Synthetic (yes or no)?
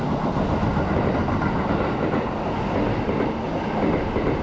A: no